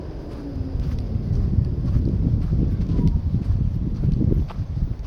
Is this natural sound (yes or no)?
yes